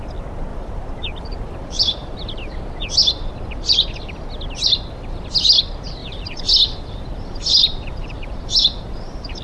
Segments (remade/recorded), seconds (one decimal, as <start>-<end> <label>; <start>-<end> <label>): 0.0-0.5 recorded; 0.5-2.4 remade; 2.4-6.0 recorded; 6.0-9.4 remade